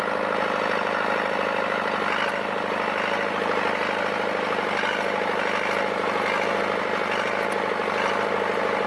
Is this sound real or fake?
real